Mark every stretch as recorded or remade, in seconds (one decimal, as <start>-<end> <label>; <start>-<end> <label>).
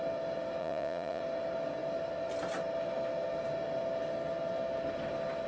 0.0-0.6 recorded; 0.6-1.2 remade; 1.2-5.5 recorded